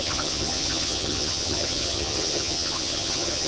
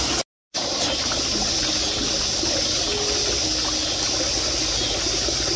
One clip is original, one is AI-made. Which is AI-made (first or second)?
first